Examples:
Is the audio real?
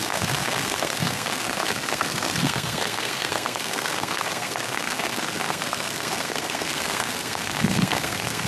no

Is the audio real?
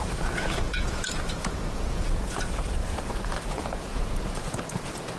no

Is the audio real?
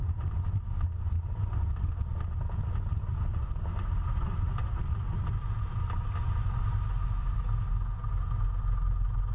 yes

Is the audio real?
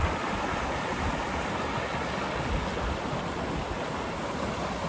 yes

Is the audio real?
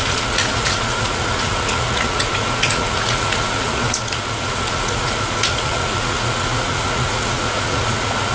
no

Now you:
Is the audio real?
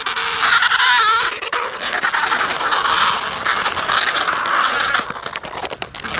yes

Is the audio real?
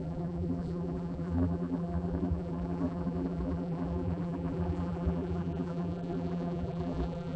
no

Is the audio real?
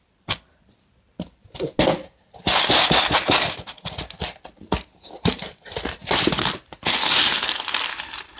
yes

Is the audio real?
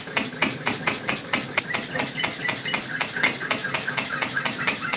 yes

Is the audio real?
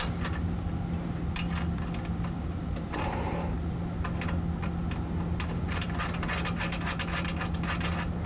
yes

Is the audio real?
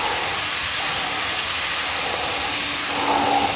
yes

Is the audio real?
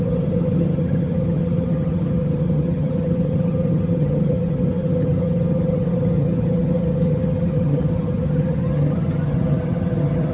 no